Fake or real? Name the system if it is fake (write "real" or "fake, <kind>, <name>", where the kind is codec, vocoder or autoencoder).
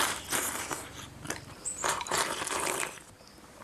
fake, vocoder, BigVGAN v2